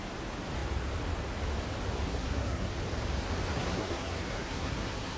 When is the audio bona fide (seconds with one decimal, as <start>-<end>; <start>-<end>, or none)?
0.0-2.1; 2.7-3.5